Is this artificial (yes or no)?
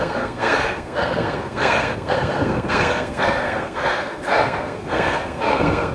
yes